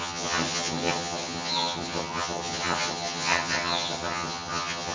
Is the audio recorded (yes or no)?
no